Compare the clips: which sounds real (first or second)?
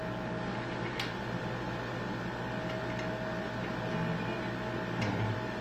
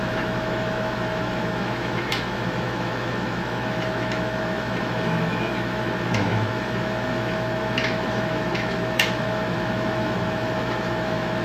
first